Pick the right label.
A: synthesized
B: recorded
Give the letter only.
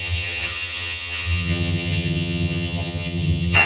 A